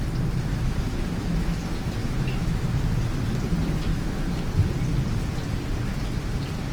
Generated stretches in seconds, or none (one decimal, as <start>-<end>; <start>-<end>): 0.5-1.6; 2.0-3.0; 3.9-4.5